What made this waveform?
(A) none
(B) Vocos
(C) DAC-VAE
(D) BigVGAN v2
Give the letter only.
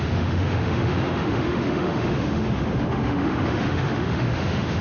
C